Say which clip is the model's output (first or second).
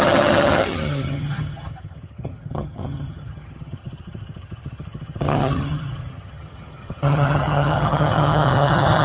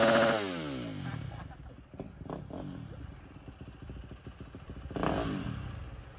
first